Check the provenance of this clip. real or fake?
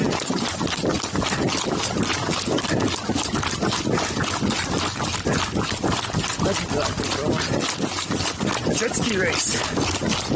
real